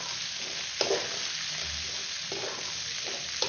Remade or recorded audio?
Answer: recorded